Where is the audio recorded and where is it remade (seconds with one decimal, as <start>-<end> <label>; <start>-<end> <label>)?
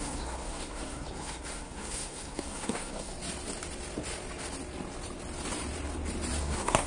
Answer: 0.0-3.1 remade; 3.1-6.4 recorded; 6.4-6.9 remade